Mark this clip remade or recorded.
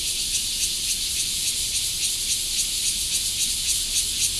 recorded